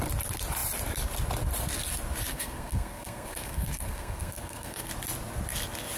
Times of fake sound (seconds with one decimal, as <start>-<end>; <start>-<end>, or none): 2.3-4.9